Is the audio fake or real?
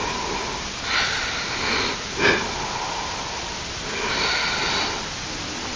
real